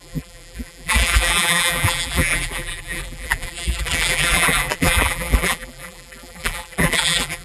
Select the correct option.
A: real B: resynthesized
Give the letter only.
B